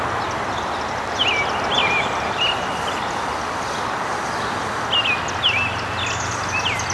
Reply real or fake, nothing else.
real